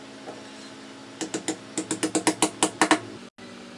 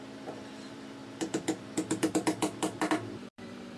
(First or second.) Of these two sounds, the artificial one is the second